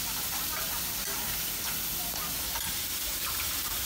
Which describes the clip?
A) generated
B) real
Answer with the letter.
B